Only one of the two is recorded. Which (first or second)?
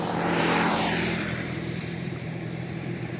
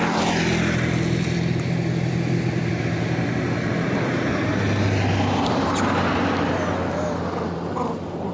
second